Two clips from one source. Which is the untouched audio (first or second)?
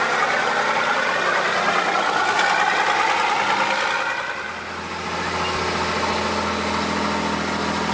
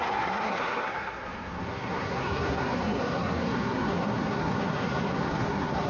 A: first